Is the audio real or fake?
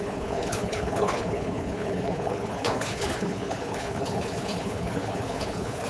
fake